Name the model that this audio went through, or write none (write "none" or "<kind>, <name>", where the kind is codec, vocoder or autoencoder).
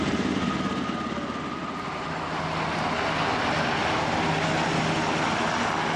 none